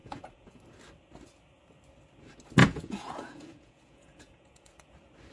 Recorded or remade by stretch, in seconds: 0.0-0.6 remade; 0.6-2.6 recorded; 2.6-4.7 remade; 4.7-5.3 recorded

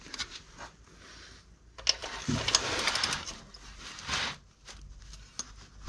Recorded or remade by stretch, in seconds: 0.0-5.9 recorded

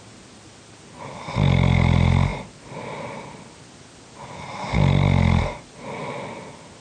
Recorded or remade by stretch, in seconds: 0.0-6.8 recorded

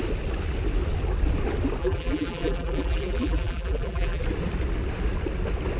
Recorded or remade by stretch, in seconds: 0.0-1.8 recorded; 1.8-4.2 remade; 4.2-5.8 recorded

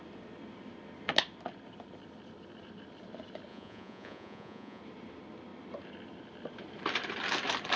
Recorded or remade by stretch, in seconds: 0.0-3.5 recorded; 3.5-4.8 remade; 4.8-7.8 recorded

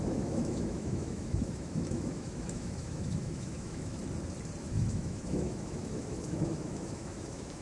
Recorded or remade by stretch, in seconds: 0.0-4.0 remade; 4.0-4.6 recorded; 4.6-7.6 remade